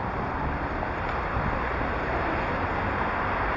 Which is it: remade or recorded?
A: remade